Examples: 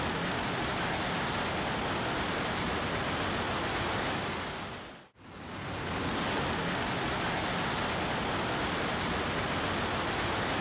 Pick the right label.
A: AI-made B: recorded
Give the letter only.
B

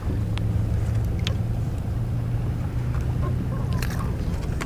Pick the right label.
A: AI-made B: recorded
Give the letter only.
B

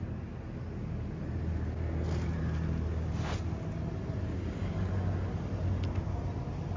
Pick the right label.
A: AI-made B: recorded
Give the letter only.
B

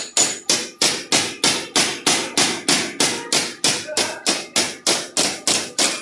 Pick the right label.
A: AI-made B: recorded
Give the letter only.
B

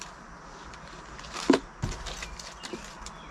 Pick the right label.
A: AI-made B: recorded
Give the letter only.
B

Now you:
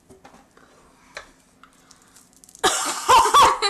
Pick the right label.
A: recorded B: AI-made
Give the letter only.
A